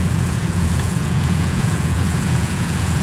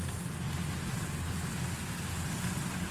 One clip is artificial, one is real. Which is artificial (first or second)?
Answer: first